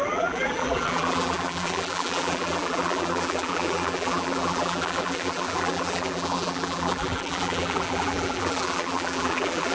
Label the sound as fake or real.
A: fake